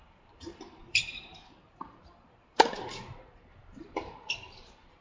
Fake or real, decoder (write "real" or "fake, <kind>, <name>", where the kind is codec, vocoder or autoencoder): fake, vocoder, BigVGAN v2